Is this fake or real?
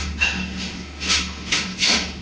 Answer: fake